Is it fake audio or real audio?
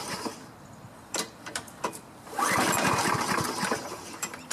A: fake